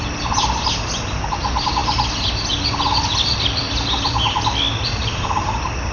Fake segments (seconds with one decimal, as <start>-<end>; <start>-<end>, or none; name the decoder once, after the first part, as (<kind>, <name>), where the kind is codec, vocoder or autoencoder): none